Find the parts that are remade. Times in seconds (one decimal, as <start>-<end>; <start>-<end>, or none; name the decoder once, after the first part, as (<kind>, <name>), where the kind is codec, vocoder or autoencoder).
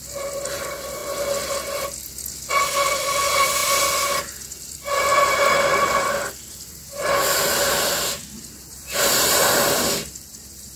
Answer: 0.0-1.0 (vocoder, BigVGAN v2); 2.5-3.6; 4.2-10.8